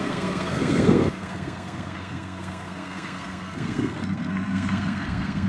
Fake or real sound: fake